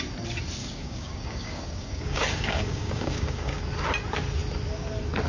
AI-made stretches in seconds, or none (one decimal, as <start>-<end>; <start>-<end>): 0.6-3.6